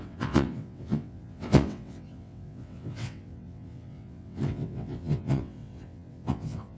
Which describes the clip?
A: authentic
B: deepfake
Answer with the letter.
B